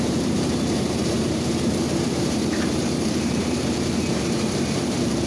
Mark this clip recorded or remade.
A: remade